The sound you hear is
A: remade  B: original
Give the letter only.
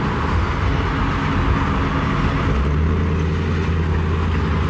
B